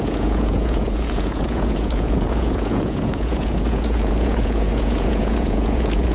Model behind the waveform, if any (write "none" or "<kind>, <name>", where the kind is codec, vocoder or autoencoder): vocoder, Vocos